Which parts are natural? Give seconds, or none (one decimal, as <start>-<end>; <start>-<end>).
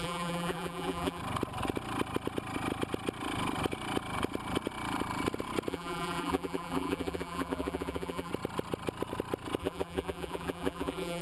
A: 1.2-5.7; 8.3-9.6